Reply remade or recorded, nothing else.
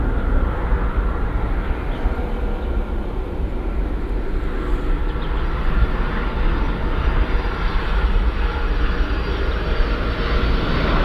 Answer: recorded